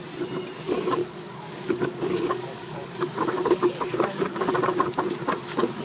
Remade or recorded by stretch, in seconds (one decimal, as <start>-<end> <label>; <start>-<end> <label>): 0.0-1.0 recorded; 1.0-4.5 remade; 4.5-5.8 recorded